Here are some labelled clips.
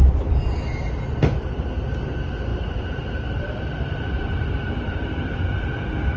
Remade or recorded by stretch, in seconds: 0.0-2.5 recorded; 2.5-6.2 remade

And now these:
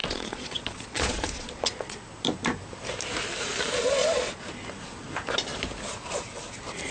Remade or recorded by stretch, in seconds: 0.0-2.0 remade; 2.0-4.0 recorded; 4.0-4.5 remade; 4.5-6.9 recorded

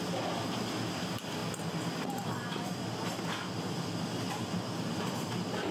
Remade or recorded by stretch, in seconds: 0.0-5.7 recorded